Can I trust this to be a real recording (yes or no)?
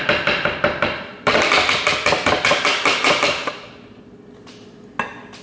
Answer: yes